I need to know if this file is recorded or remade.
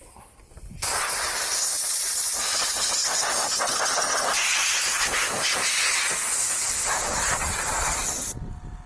recorded